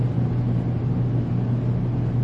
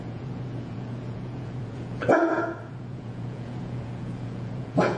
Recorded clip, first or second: first